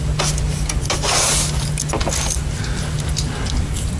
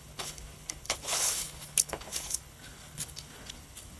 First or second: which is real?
first